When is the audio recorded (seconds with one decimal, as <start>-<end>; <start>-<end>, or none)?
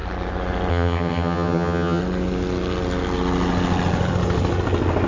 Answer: 0.0-0.7; 2.0-5.1